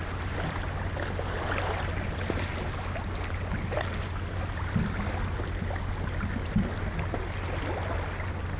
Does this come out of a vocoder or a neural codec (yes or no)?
no